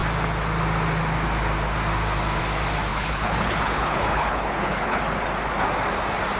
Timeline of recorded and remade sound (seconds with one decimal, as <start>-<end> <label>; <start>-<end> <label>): 0.0-2.9 recorded; 2.9-5.0 remade; 5.0-6.4 recorded